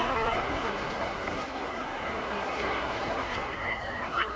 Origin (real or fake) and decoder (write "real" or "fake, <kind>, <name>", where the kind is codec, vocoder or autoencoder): fake, codec, SNAC